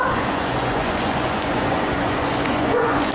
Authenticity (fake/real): fake